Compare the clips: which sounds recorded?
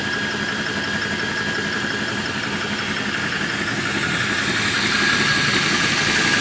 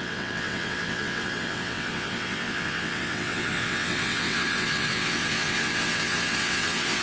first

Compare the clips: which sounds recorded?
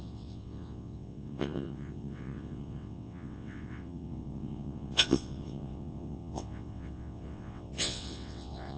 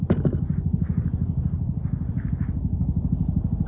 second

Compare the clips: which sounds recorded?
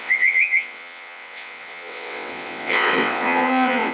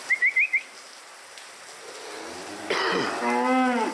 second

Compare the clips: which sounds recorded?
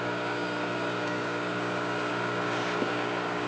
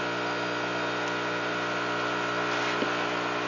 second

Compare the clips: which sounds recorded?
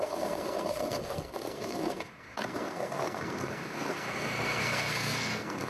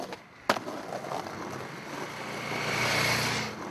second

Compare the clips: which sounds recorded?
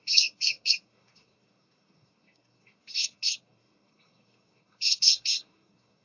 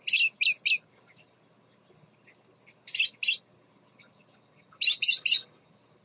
second